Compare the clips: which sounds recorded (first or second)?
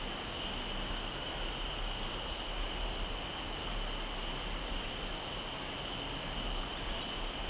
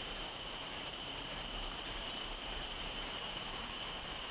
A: first